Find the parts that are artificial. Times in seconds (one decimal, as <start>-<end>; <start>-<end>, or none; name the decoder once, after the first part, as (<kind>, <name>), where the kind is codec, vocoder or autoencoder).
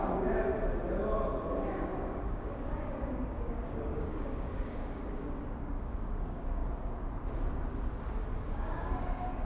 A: 0.0-0.5 (codec, DAC); 1.5-6.6; 8.3-9.5